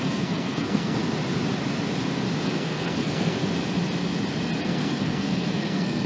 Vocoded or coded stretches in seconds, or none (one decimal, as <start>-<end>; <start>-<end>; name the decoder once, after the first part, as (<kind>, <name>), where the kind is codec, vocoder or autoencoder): 0.0-1.0 (codec, SNAC); 2.4-3.4; 4.6-6.1